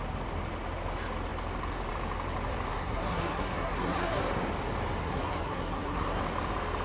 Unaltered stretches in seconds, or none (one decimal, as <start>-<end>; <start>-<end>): 0.0-2.7; 4.2-5.0; 6.2-6.8